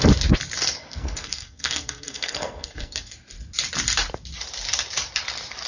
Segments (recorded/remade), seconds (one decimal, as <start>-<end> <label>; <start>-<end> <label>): 0.0-0.8 recorded; 0.8-3.1 remade; 3.1-5.7 recorded